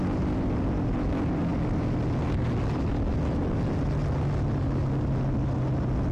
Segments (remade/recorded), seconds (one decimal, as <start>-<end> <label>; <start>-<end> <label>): 0.0-6.1 recorded